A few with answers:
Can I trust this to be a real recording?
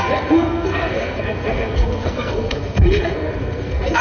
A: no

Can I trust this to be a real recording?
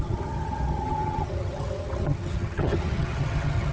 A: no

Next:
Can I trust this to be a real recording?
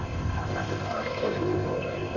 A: no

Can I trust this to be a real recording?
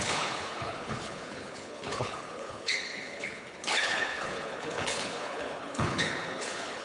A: no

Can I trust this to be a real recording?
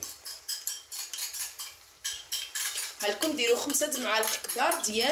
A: no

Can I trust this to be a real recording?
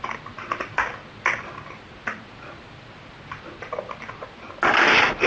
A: yes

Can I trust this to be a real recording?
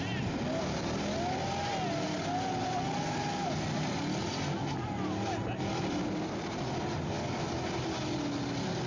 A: yes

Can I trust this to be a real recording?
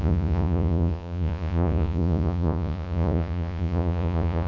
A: no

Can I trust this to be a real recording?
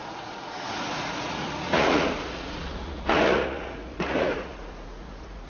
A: no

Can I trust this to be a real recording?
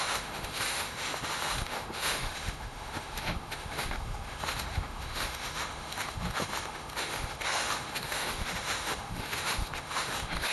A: no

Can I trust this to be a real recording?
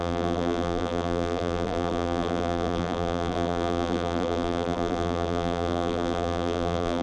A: no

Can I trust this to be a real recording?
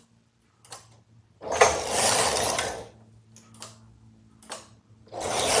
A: yes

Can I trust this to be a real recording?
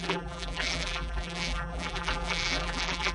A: no